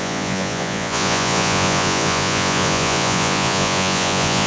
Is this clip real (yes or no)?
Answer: no